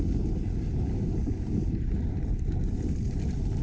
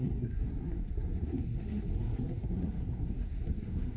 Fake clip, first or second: second